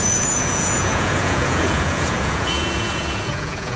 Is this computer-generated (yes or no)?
yes